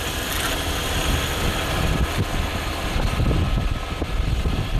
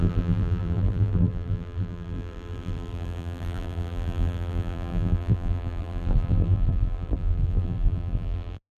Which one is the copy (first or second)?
second